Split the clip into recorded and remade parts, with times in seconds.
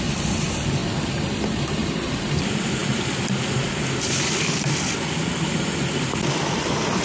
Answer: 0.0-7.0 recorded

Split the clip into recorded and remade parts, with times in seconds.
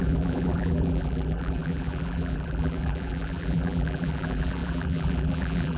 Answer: 0.0-5.8 remade